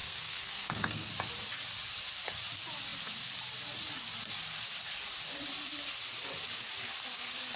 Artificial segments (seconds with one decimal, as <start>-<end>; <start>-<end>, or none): 0.0-1.1